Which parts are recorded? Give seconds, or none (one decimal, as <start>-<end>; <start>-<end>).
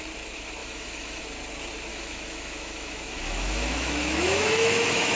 0.0-0.6; 1.2-1.9